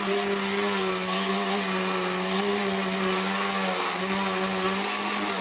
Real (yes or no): yes